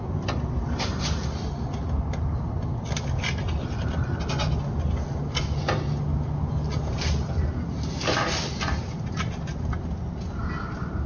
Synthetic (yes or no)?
no